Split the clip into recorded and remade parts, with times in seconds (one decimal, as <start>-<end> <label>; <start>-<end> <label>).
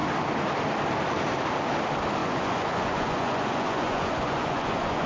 0.0-2.2 recorded; 2.2-5.1 remade